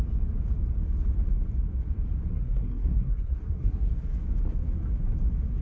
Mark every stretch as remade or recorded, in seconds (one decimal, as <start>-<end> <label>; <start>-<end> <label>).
0.0-2.3 recorded; 2.3-3.9 remade; 3.9-5.6 recorded

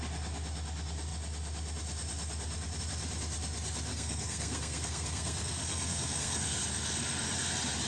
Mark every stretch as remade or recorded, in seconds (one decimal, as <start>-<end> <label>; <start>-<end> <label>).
0.0-3.9 recorded; 3.9-6.6 remade; 6.6-7.9 recorded